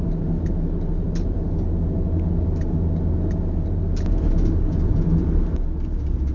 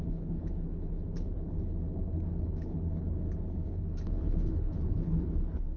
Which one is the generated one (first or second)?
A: second